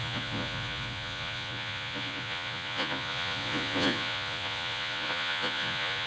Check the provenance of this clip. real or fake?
fake